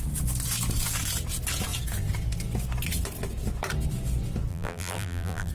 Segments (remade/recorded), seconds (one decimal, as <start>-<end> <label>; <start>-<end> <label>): 0.0-4.5 recorded; 4.5-5.5 remade